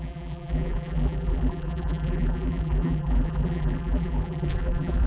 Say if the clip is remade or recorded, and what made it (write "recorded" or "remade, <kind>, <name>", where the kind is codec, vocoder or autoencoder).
remade, vocoder, BigVGAN v2